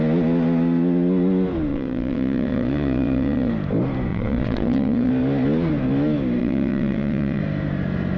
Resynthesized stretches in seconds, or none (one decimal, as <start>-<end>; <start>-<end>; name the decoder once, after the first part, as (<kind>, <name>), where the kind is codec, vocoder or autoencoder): 1.7-3.5 (vocoder, WaveNeXt); 4.1-5.1; 6.4-7.4